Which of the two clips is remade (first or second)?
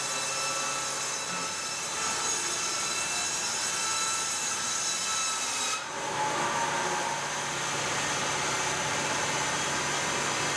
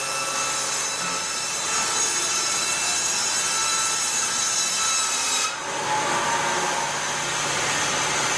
first